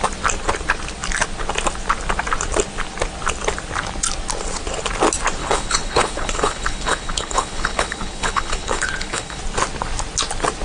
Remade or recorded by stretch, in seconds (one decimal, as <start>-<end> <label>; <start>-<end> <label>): 0.0-5.4 recorded; 5.4-9.4 remade; 9.4-10.6 recorded